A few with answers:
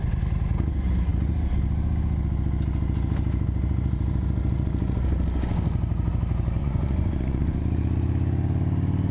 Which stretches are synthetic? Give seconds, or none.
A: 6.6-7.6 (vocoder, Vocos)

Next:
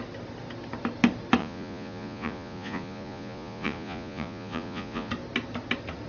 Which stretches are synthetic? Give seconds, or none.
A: 1.4-5.1 (vocoder, Vocos)

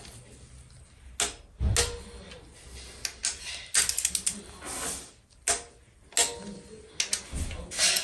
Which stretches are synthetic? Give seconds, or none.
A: none

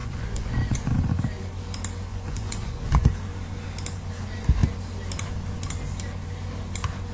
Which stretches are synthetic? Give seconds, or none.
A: 0.0-1.1 (vocoder, Vocos); 2.1-3.1

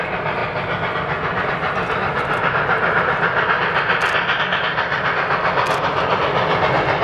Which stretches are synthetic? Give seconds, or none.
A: none

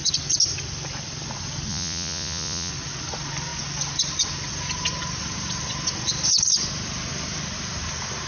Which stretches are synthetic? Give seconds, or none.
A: 1.7-2.7 (vocoder, Vocos)

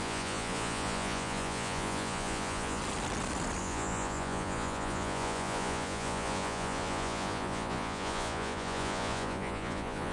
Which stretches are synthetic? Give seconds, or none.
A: 0.0-2.8 (vocoder, Vocos); 3.6-10.1

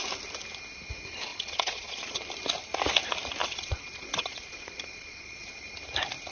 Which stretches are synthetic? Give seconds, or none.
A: 1.3-2.2 (vocoder, Vocos); 3.4-5.5